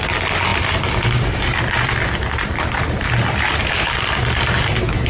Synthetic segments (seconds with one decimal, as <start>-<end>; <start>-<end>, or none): none